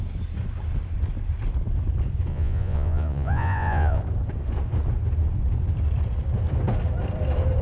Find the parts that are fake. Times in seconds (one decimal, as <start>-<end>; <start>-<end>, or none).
2.3-4.0